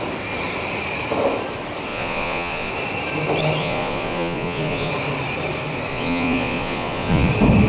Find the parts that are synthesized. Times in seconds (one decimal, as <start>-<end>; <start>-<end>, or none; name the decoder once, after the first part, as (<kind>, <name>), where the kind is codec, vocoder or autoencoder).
1.9-2.7 (vocoder, Vocos); 3.6-4.9; 5.9-7.3